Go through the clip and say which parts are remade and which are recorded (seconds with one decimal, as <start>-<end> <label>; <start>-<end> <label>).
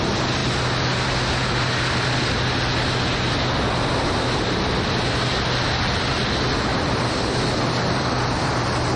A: 0.0-6.7 recorded; 6.7-8.6 remade; 8.6-9.0 recorded